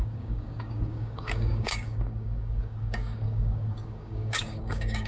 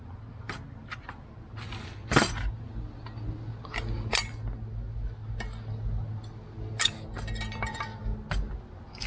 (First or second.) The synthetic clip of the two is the first